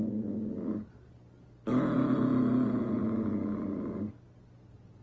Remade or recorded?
recorded